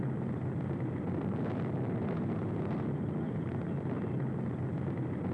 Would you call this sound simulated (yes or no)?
no